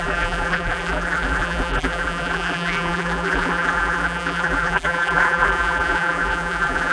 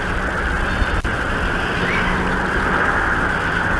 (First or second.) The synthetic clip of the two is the first